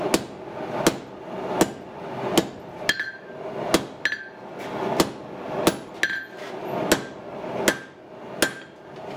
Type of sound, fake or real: real